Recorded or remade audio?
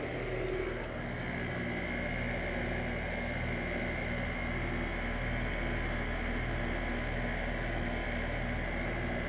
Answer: recorded